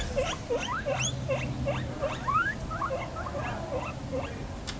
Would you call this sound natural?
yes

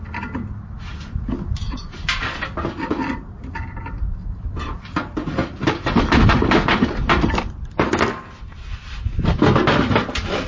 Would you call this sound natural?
yes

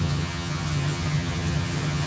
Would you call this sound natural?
no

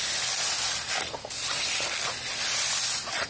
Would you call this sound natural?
yes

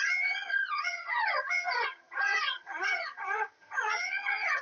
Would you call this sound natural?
no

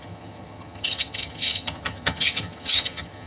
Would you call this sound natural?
no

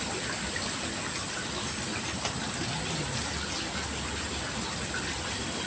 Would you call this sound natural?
yes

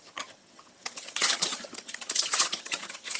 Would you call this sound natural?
no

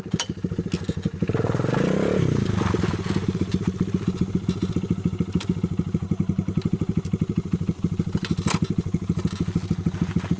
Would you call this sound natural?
yes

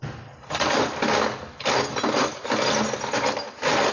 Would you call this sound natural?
yes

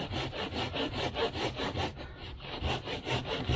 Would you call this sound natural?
yes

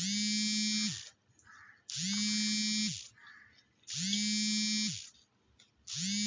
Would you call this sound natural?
yes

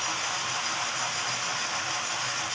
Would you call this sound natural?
yes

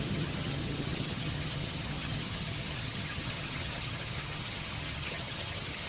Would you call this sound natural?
no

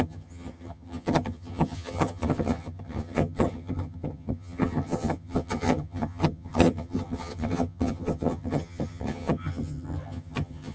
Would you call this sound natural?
no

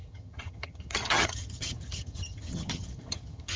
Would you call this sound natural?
no